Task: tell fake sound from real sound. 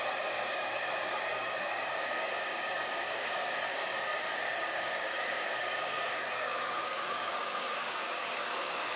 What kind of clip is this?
fake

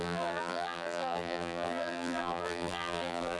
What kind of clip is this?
fake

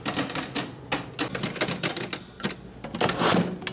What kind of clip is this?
real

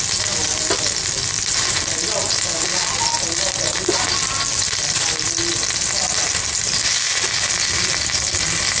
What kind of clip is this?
real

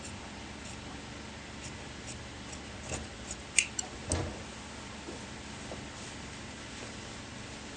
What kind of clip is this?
real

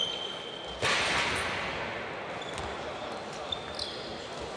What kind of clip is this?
real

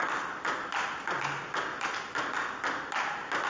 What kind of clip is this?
real